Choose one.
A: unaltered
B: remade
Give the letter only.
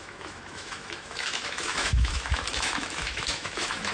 B